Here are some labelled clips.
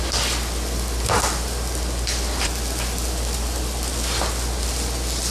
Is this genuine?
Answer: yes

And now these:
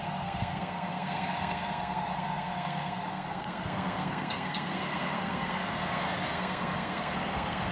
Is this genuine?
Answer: no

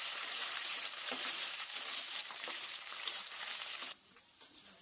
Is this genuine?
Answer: no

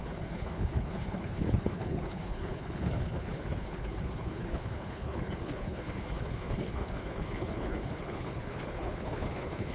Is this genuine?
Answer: no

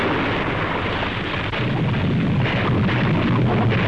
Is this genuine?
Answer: yes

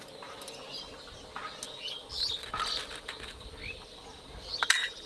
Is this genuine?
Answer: yes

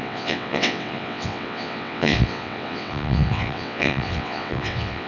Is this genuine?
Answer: no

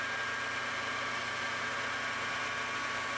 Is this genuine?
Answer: yes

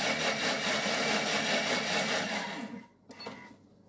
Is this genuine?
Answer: yes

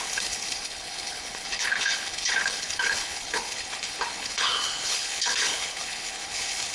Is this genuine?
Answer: no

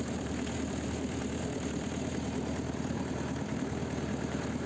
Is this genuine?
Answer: no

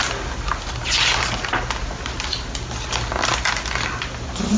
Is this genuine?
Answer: yes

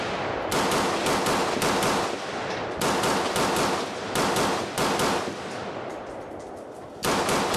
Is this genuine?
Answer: yes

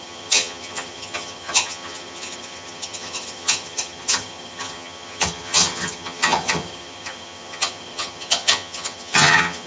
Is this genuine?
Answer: no